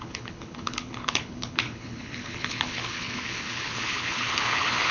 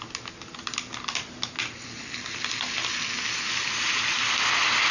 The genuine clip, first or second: second